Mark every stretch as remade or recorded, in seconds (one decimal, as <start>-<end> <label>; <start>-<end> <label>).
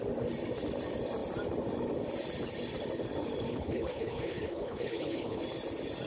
0.0-3.5 recorded; 3.5-5.4 remade; 5.4-6.1 recorded